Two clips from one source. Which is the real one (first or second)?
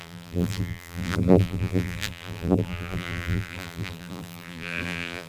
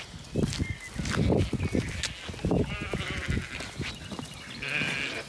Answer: second